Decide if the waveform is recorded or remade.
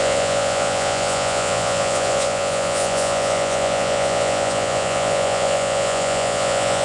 remade